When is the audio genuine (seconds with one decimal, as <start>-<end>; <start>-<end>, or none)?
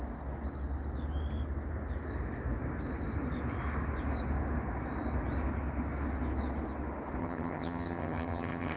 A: 0.0-7.2